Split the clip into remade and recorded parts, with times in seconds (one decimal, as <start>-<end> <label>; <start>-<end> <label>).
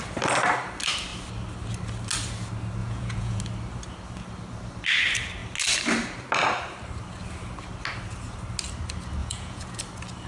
0.0-2.8 recorded; 2.8-3.4 remade; 3.4-9.2 recorded; 9.2-9.8 remade; 9.8-10.3 recorded